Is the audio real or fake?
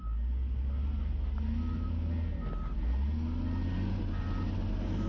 real